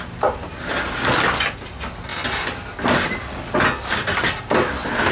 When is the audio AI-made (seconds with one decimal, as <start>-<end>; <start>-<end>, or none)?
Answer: none